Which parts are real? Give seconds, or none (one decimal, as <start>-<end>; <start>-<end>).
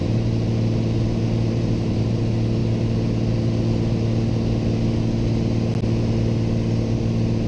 2.2-7.5